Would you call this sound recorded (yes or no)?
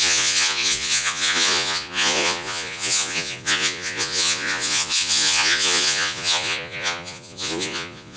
no